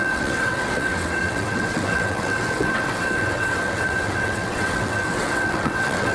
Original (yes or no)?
no